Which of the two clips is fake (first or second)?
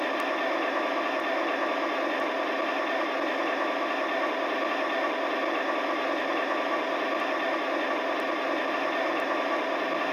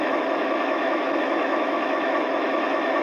second